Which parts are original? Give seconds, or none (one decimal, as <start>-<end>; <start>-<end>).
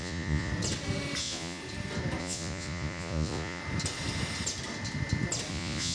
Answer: 0.5-1.2; 1.6-2.2; 3.6-5.5